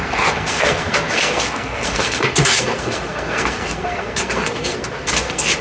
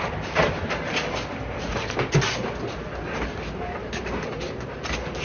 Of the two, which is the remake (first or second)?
first